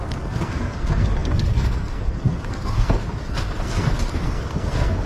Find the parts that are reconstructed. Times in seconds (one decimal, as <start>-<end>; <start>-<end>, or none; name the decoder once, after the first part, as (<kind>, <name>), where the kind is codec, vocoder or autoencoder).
0.0-5.1 (codec, SNAC)